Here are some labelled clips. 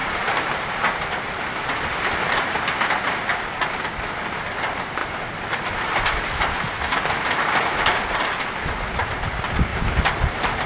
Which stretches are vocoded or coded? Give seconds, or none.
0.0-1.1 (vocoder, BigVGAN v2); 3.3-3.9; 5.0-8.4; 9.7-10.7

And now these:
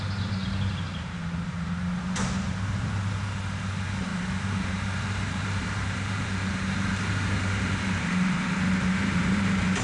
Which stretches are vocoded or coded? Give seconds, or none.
0.0-9.8 (vocoder, BigVGAN v2)

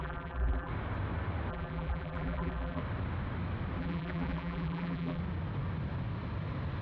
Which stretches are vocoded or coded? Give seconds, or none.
0.0-0.7 (vocoder, BigVGAN v2); 1.5-2.8; 3.8-5.2

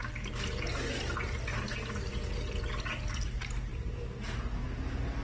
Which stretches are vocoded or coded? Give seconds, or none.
1.5-2.7 (vocoder, BigVGAN v2); 3.7-4.8

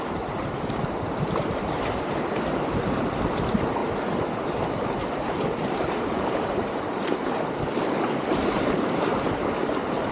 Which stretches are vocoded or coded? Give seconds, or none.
0.0-3.8 (vocoder, BigVGAN v2); 5.1-10.1